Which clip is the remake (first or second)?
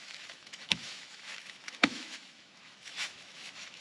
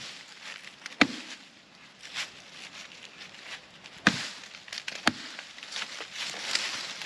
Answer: first